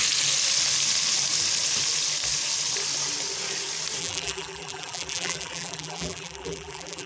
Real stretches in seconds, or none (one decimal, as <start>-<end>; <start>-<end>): 0.0-4.0